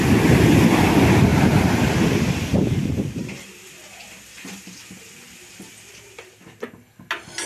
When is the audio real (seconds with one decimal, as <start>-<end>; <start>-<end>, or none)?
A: 0.0-1.3; 2.1-2.5; 3.5-7.5